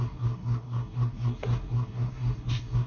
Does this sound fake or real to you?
fake